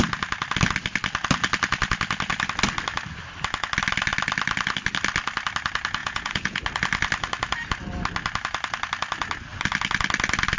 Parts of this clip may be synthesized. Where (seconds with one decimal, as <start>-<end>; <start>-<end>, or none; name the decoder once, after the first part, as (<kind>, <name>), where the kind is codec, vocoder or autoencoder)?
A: 6.0-6.6 (vocoder, Vocos)